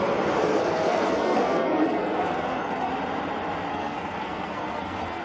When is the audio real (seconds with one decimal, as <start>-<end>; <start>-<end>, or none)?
0.0-0.5; 2.9-3.7